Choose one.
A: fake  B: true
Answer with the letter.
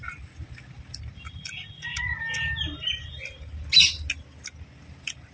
B